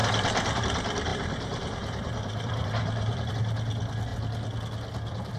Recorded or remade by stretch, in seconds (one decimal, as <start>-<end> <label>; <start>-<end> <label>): 0.0-0.6 remade; 0.6-1.1 recorded; 1.1-3.3 remade; 3.3-5.4 recorded